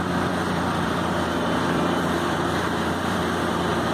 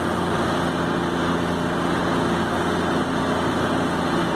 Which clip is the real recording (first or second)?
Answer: second